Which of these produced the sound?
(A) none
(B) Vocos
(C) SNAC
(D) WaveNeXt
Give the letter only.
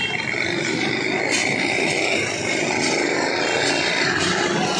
A